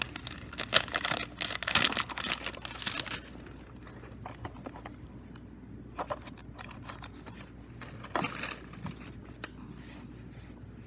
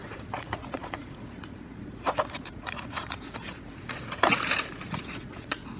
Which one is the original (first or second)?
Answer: first